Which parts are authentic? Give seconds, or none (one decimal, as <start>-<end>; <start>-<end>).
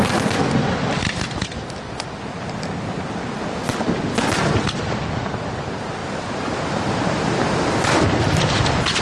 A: 0.0-6.0; 7.5-9.0